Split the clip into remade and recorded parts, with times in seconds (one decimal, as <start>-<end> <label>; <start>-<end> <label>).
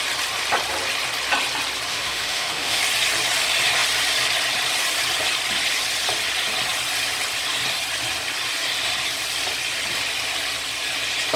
0.0-1.9 recorded; 1.9-2.8 remade; 2.8-11.4 recorded